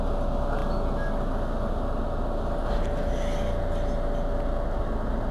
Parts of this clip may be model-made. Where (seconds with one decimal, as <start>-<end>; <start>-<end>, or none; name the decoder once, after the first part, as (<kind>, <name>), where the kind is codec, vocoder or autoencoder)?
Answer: none